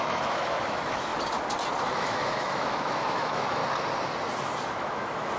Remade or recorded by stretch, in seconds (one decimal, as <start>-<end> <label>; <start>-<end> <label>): 0.0-1.1 remade; 1.1-1.9 recorded; 1.9-3.6 remade; 3.6-4.7 recorded; 4.7-5.4 remade

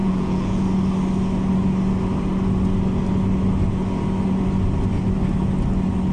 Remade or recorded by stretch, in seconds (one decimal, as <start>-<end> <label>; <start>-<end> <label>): 0.0-0.6 remade; 0.6-6.1 recorded